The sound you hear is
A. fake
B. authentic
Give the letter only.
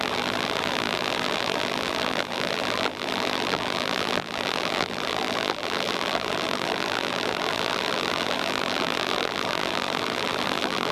A